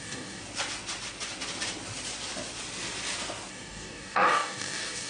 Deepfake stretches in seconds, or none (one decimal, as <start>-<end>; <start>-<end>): 0.0-0.4; 3.5-5.1